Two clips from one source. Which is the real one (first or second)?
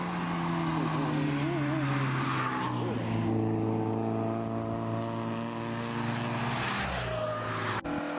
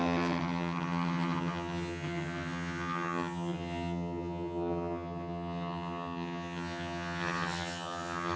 first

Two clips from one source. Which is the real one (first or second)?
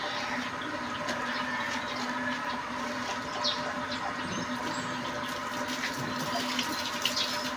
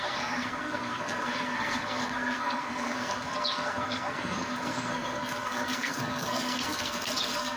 first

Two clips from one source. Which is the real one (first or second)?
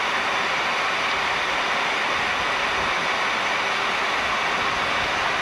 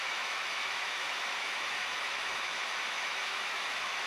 first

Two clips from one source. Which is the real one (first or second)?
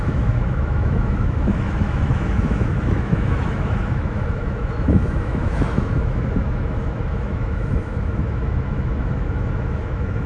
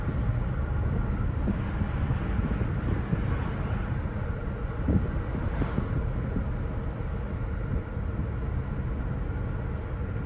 second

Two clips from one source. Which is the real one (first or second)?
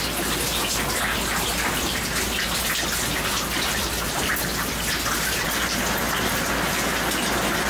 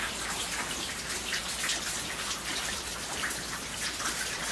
first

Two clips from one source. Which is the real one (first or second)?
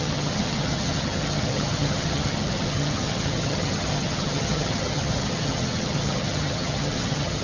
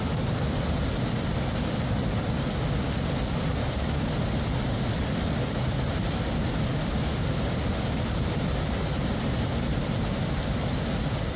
second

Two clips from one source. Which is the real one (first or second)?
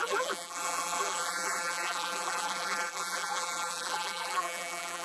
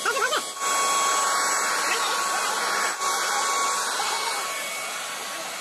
second